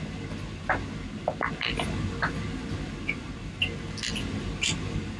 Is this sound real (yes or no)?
yes